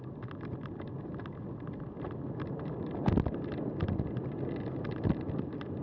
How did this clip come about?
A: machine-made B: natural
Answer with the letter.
B